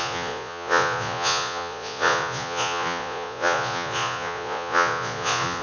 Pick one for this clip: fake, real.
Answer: fake